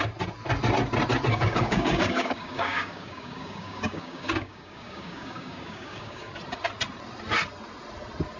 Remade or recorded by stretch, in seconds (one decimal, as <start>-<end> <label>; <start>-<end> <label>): 0.0-1.3 recorded; 1.3-6.3 remade; 6.3-8.4 recorded